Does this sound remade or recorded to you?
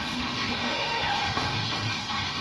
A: remade